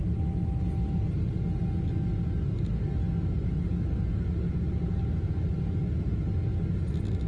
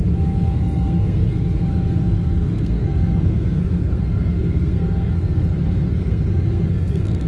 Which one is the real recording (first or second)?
first